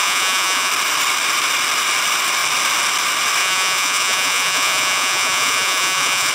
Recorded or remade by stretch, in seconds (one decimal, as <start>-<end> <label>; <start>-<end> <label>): 0.0-0.7 remade; 0.7-3.4 recorded; 3.4-6.3 remade